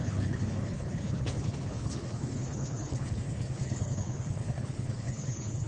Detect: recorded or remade remade